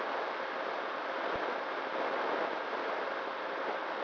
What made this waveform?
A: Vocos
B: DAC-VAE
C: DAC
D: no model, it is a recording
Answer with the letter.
D